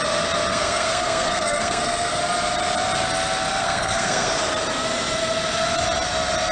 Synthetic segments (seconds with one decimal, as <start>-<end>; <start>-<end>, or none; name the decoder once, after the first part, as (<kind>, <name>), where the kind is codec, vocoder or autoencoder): 0.5-2.2 (codec, SNAC); 3.5-4.4

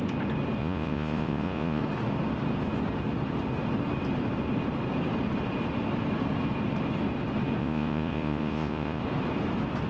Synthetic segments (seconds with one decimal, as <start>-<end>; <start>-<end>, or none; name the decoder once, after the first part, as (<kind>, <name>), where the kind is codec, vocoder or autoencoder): 0.6-1.8 (vocoder, Vocos); 7.6-9.0

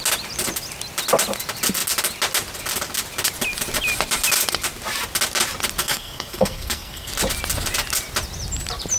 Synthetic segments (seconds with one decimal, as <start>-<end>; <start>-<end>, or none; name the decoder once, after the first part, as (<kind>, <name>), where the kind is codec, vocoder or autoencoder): 5.8-7.1 (codec, SNAC)